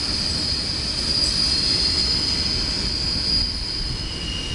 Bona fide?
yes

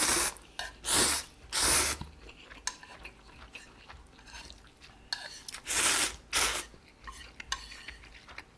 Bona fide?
yes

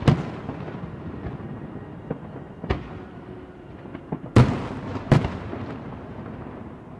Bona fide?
yes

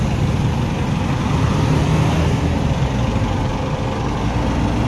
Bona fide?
yes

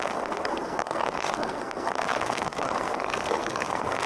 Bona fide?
no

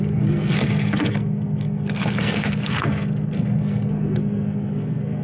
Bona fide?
no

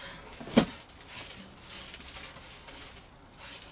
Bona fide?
yes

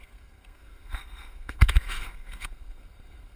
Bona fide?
no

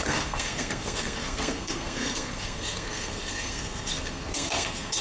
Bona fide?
no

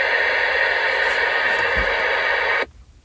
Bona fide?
yes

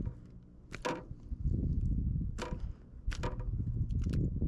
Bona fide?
yes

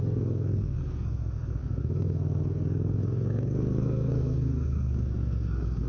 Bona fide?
no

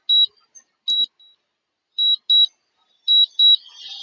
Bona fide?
yes